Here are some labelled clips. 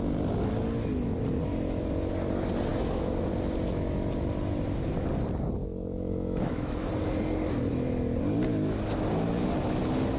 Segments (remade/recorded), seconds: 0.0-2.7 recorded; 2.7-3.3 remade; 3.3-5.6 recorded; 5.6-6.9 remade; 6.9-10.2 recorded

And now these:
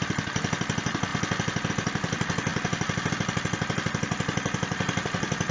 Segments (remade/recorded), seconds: 0.0-1.1 remade; 1.1-1.7 recorded; 1.7-5.5 remade

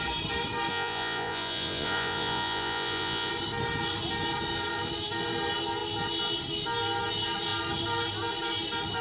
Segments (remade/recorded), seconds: 0.0-0.7 recorded; 0.7-3.3 remade; 3.3-9.0 recorded

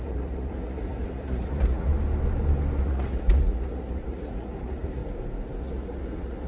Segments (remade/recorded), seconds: 0.0-1.9 remade; 1.9-2.8 recorded; 2.8-5.0 remade; 5.0-5.6 recorded; 5.6-6.5 remade

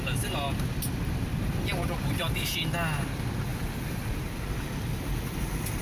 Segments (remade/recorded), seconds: 0.0-1.3 recorded; 1.3-2.5 remade; 2.5-3.5 recorded; 3.5-4.7 remade; 4.7-5.8 recorded